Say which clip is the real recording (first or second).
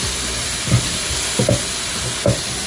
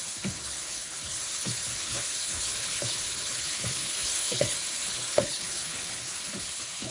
first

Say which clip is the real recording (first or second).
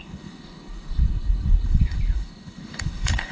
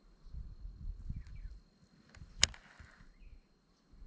second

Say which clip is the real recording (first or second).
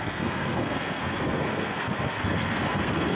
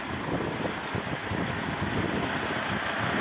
second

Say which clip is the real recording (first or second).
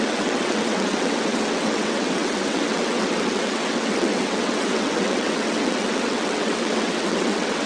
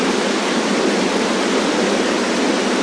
second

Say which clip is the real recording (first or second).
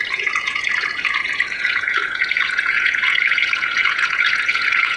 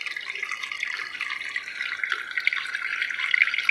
second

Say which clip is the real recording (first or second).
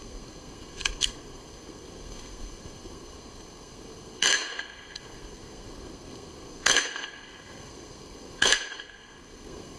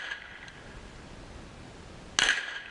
second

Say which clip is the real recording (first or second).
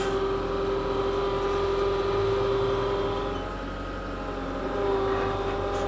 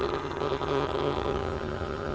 first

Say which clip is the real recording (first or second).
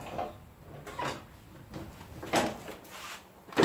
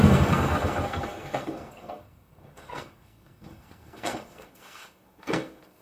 first